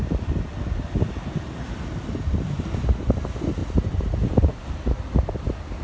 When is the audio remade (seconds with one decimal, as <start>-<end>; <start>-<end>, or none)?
none